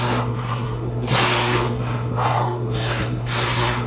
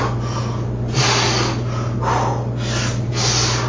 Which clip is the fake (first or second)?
first